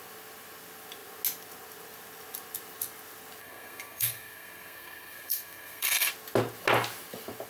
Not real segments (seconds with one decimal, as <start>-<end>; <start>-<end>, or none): 3.4-6.1